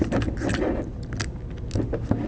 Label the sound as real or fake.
real